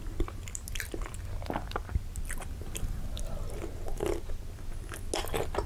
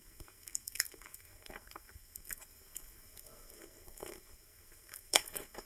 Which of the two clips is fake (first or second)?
second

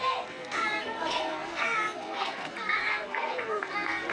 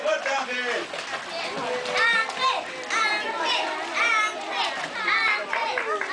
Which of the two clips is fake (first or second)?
first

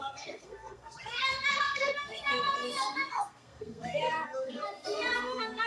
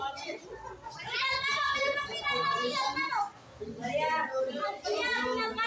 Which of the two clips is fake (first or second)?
first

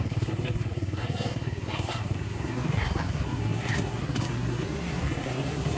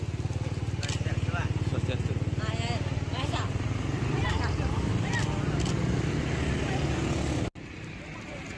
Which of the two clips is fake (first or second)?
first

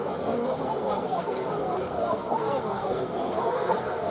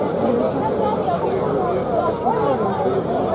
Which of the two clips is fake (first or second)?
first